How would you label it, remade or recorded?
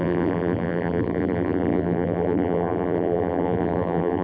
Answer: remade